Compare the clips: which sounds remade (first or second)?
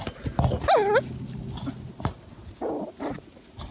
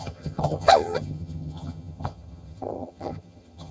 second